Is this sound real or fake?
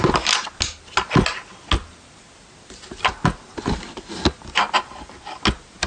real